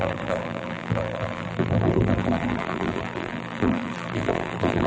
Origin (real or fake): fake